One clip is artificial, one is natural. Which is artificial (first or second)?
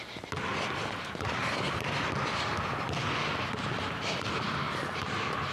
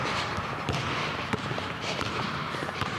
second